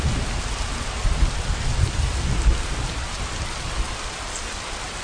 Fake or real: real